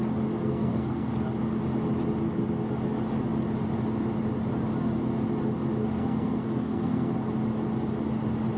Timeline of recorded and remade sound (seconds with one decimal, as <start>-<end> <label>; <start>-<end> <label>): 0.0-0.4 recorded; 0.4-1.1 remade; 1.1-5.8 recorded; 5.8-7.1 remade; 7.1-8.6 recorded